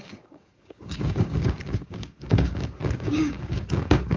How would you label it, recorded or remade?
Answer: remade